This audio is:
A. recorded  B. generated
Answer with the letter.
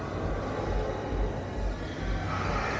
A